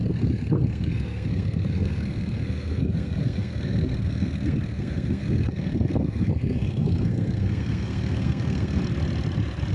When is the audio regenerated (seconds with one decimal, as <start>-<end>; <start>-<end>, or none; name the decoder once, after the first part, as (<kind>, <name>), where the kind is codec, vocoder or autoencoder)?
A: 0.0-8.8 (codec, SNAC)